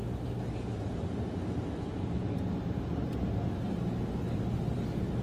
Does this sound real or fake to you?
real